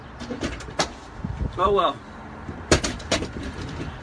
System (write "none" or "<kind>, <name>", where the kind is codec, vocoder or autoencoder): vocoder, BigVGAN v2